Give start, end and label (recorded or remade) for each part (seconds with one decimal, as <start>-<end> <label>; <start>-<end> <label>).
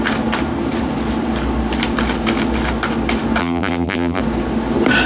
0.0-3.4 recorded; 3.4-4.2 remade; 4.2-5.1 recorded